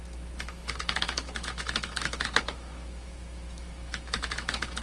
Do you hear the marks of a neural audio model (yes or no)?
yes